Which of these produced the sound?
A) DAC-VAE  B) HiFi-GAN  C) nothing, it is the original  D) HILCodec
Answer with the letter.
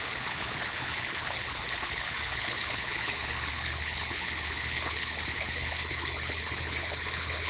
D